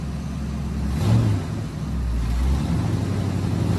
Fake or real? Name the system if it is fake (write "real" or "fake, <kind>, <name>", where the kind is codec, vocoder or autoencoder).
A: real